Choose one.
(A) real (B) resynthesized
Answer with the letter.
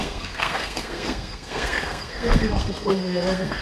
B